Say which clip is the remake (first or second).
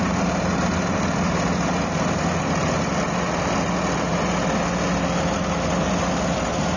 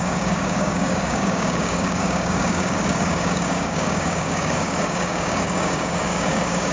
second